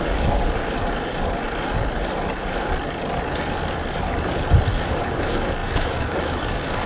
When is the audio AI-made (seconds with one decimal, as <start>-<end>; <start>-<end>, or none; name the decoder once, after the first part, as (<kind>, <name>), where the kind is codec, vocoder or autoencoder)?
0.0-0.6 (codec, DAC); 4.7-6.9